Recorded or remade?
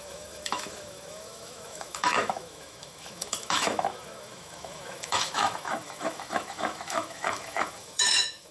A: remade